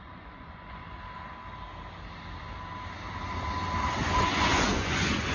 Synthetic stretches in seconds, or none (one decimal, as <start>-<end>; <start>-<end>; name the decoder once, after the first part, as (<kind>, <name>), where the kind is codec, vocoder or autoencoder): 0.0-0.8 (vocoder, Vocos); 4.0-5.3